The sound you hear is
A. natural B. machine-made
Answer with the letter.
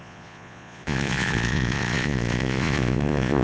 B